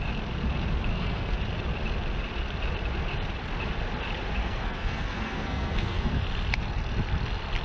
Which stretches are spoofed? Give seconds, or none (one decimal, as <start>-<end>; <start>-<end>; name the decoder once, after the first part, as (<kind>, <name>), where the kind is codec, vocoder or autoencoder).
0.9-1.4 (codec, SNAC); 4.4-6.2